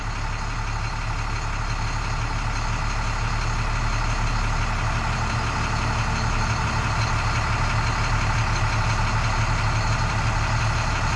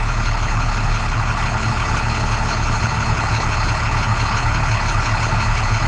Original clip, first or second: first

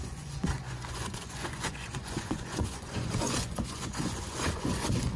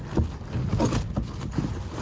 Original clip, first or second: second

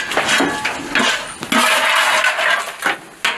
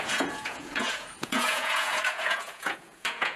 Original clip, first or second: first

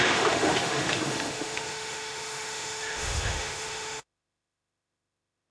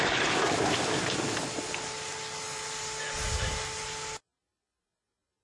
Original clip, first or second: second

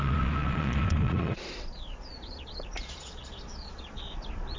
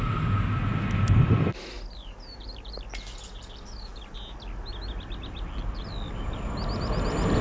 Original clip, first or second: second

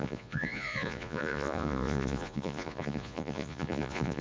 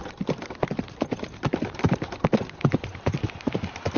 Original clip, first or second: second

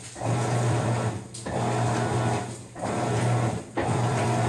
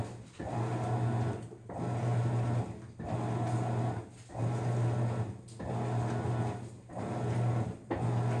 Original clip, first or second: second